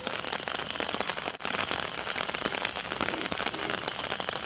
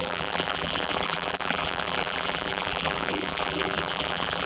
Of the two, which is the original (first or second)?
first